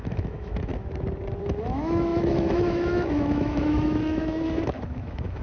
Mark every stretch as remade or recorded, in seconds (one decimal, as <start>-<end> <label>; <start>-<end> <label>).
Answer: 0.0-0.7 remade; 0.7-1.4 recorded; 1.4-5.4 remade